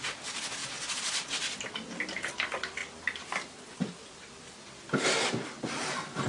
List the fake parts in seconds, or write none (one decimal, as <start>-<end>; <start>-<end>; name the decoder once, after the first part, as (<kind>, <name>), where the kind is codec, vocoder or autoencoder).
none